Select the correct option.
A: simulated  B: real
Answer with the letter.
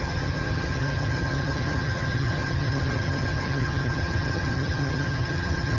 A